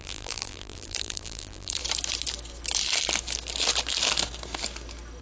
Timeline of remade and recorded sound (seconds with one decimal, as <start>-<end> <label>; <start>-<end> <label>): 0.0-1.8 remade; 1.8-5.2 recorded